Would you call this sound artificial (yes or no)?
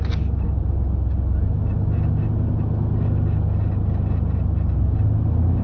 no